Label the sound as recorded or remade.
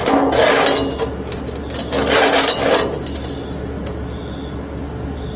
recorded